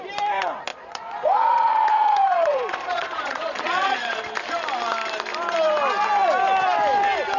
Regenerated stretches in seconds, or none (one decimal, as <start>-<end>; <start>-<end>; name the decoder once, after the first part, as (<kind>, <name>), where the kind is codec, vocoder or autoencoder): 0.7-4.2 (vocoder, Vocos)